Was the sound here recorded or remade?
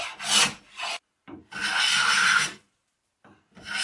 recorded